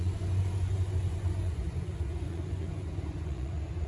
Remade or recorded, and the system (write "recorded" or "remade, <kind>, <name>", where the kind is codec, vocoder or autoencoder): remade, vocoder, Vocos